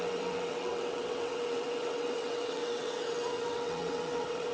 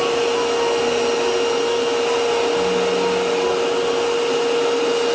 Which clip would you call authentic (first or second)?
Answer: second